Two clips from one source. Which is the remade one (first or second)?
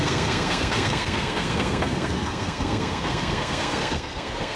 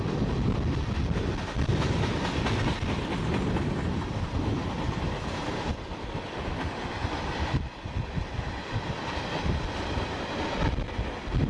first